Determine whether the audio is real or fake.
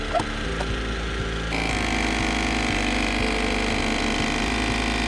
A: real